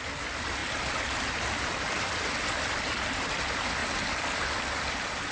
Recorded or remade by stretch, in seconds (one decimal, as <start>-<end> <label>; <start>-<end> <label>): 0.0-5.3 recorded

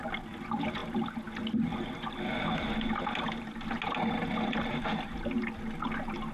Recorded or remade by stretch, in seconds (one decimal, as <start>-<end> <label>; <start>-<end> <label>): 0.0-6.3 recorded

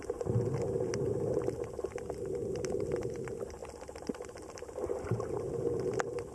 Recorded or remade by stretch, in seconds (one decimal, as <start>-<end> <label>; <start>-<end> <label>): 0.0-6.3 recorded

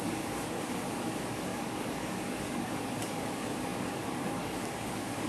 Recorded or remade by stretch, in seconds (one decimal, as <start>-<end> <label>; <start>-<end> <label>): 0.0-5.3 remade

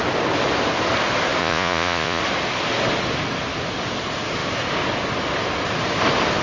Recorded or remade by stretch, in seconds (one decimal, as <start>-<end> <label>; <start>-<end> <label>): 0.0-1.4 recorded; 1.4-2.2 remade; 2.2-6.4 recorded